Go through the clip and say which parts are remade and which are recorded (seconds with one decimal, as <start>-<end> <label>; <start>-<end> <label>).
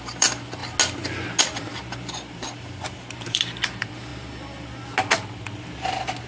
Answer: 0.0-0.6 remade; 0.6-1.4 recorded; 1.4-4.1 remade; 4.1-5.1 recorded; 5.1-6.3 remade